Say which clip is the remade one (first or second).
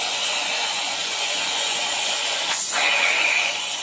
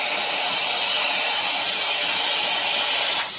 first